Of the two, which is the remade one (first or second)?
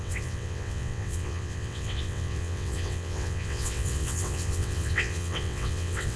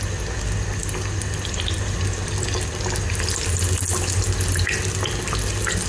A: first